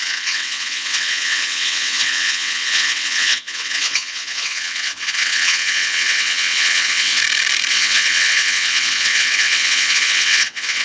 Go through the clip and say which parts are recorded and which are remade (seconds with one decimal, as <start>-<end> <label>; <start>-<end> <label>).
0.0-7.2 remade; 7.2-7.7 recorded; 7.7-10.8 remade